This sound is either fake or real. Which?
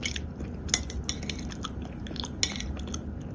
real